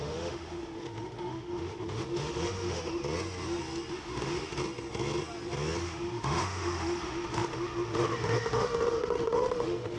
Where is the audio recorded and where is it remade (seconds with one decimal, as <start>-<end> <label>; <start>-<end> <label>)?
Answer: 0.0-3.0 remade; 3.0-3.9 recorded; 3.9-4.6 remade; 4.6-5.8 recorded; 5.8-10.0 remade